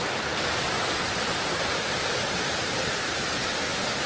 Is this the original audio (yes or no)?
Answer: yes